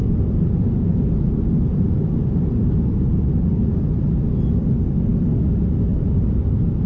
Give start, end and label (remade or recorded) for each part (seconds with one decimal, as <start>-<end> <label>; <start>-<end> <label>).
0.0-4.1 remade; 4.1-5.9 recorded; 5.9-6.5 remade; 6.5-6.9 recorded